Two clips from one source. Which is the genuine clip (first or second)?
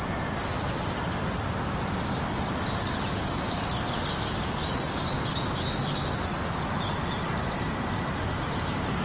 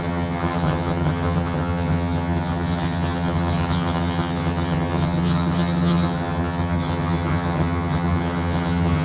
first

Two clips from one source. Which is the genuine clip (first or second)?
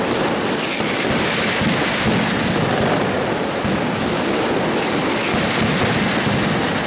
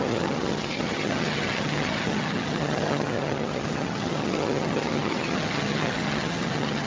first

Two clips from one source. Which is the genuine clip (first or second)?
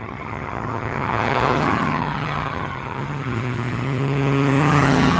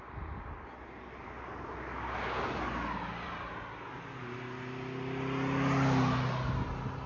second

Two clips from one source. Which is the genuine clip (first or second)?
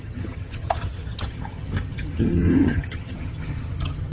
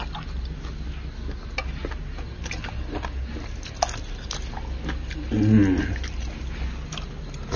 second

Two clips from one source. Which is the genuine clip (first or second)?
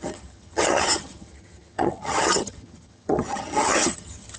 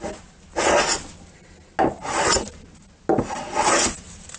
second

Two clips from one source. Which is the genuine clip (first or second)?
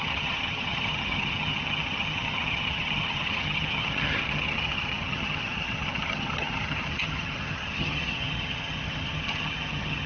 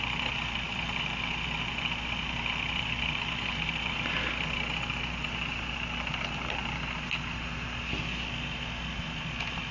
second